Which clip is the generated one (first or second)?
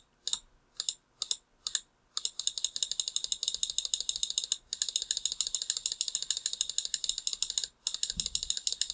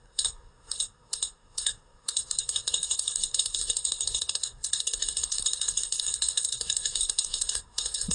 second